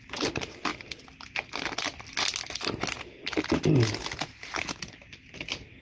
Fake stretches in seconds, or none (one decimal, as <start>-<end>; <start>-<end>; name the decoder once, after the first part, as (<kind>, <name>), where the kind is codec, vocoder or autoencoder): none